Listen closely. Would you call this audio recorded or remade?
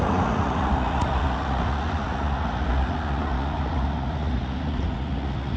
remade